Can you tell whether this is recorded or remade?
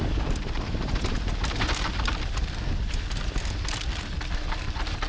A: recorded